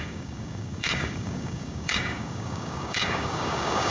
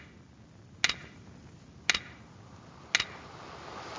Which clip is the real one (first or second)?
second